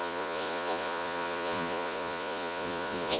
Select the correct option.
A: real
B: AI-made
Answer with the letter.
B